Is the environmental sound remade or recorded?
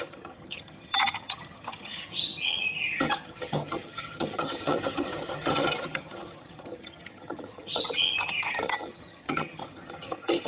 remade